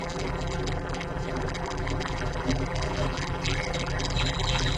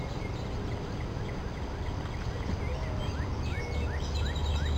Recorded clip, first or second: second